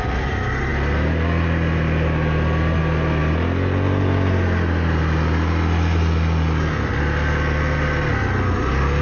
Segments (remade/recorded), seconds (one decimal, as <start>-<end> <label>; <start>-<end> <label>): 0.0-9.0 recorded